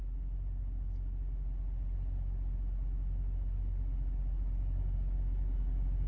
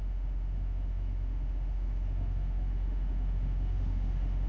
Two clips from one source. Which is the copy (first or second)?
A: second